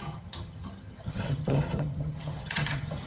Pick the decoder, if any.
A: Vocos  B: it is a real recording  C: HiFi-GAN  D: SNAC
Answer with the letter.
C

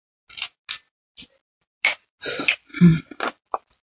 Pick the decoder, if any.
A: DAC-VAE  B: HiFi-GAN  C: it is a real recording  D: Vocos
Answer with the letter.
C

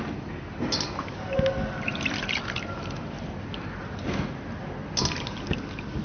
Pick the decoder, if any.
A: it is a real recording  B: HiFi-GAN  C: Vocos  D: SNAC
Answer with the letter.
A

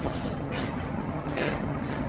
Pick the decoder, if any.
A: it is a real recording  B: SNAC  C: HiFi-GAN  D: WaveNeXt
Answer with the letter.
C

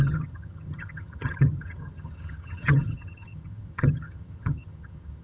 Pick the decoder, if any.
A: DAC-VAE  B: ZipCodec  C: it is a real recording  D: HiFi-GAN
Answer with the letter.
D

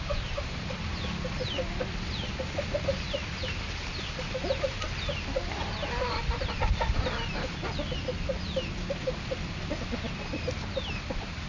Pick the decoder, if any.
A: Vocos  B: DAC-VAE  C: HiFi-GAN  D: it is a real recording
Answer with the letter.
D